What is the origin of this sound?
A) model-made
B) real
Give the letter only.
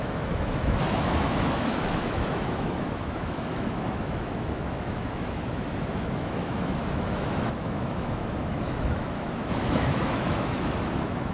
A